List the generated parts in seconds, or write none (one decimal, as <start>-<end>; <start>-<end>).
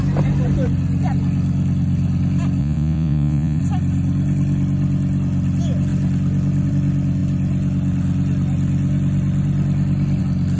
2.6-3.6